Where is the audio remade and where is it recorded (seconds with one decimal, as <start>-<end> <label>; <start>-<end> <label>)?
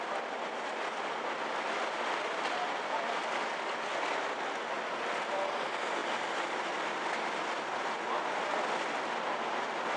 0.0-10.0 recorded